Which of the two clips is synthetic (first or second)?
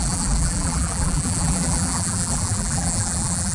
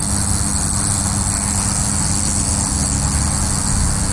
first